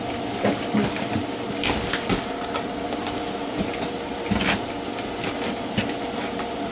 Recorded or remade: recorded